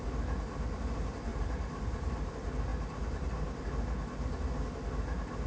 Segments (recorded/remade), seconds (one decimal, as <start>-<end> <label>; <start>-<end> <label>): 0.0-1.3 recorded; 1.3-2.3 remade; 2.3-5.5 recorded